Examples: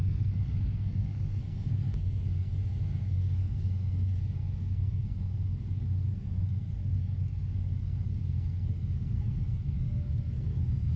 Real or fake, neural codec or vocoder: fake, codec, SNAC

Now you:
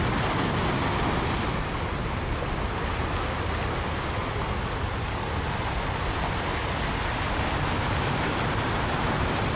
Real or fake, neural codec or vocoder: real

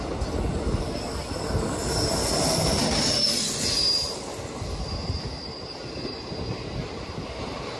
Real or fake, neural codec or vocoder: real